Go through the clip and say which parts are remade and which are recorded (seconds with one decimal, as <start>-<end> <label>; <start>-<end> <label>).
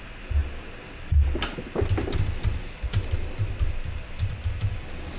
0.0-5.2 recorded